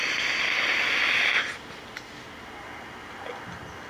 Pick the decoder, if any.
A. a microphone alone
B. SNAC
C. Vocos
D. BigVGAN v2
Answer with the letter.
A